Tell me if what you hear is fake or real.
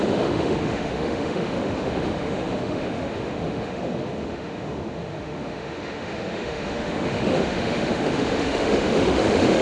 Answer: fake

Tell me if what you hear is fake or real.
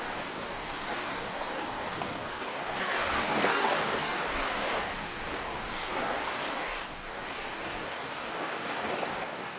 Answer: fake